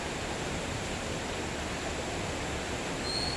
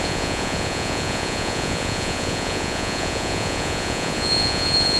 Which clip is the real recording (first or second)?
first